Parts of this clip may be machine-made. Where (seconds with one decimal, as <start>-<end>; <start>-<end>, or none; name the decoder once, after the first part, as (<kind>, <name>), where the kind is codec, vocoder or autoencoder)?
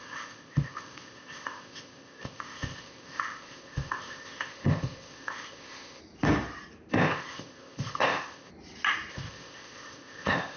0.0-6.0 (codec, ZipCodec); 6.9-8.5; 9.1-10.6